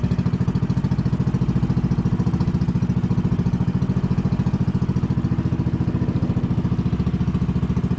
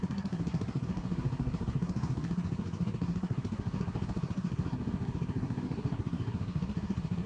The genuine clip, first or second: first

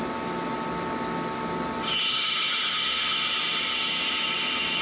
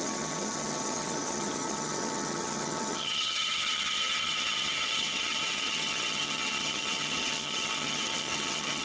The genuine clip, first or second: first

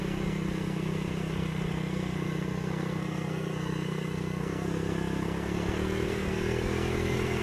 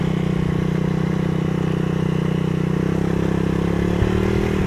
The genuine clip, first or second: second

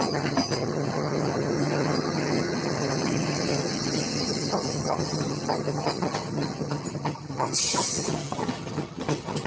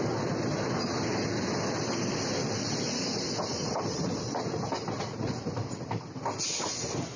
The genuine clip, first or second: second